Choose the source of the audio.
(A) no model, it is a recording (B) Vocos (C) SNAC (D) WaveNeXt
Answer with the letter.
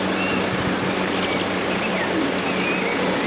A